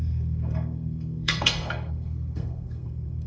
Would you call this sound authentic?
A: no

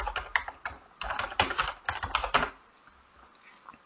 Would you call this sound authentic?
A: yes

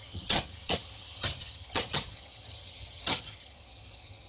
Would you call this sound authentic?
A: no